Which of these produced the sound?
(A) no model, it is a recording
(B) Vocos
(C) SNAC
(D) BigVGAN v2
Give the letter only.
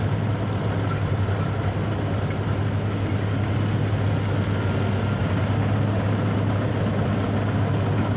A